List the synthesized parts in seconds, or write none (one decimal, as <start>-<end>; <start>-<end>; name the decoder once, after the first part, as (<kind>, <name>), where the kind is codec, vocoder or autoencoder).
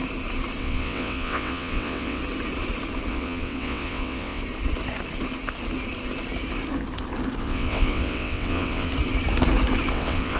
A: 0.6-2.2 (vocoder, WaveNeXt); 3.1-4.4; 7.4-8.9; 9.9-10.4